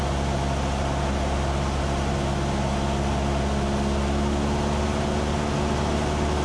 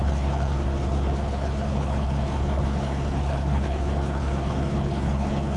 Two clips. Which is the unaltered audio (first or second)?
first